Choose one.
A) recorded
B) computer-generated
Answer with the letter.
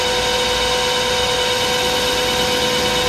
A